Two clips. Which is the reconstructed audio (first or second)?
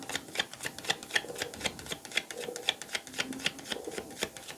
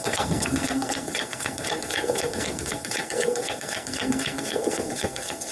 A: second